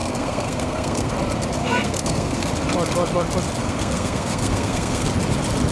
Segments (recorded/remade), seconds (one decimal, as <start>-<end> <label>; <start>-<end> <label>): 0.0-1.1 remade; 1.1-1.6 recorded; 1.6-2.5 remade; 2.5-3.6 recorded; 3.6-5.1 remade; 5.1-5.7 recorded